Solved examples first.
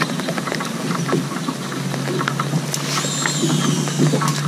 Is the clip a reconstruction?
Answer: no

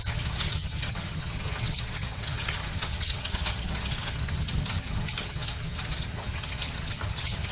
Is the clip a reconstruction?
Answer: yes